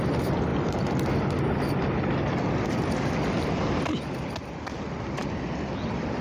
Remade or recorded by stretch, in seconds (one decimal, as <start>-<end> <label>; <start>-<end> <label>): 0.0-6.2 recorded